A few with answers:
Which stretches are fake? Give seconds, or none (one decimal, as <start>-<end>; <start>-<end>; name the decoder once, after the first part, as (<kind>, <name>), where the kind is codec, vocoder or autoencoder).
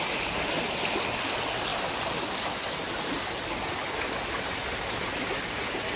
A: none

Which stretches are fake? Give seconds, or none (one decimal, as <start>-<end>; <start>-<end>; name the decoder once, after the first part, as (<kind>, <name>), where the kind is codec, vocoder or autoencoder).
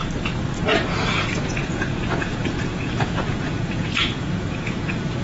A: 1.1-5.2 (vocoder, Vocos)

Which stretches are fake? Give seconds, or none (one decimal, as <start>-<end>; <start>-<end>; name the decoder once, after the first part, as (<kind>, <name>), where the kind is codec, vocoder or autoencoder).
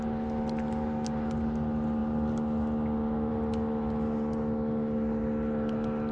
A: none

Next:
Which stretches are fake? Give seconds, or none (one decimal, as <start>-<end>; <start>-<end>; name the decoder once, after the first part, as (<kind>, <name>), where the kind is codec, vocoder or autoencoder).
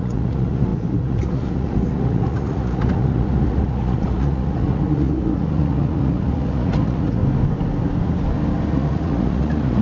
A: 0.0-7.2 (vocoder, Vocos); 8.7-9.8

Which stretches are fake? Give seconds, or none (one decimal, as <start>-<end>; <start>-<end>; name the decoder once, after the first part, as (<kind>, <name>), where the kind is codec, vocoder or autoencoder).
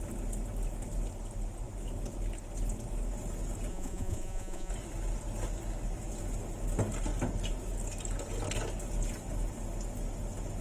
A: 3.7-4.7 (vocoder, Vocos)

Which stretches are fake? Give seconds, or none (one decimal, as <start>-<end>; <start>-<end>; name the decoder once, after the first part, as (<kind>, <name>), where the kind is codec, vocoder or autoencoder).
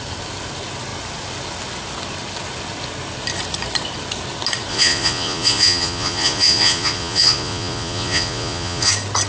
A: 4.7-8.9 (vocoder, Vocos)